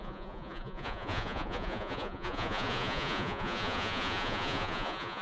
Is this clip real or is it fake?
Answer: fake